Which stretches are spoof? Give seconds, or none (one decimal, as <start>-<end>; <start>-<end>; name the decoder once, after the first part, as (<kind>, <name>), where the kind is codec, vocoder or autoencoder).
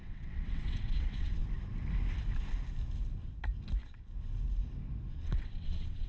0.0-1.4 (vocoder, WaveNeXt); 5.1-6.1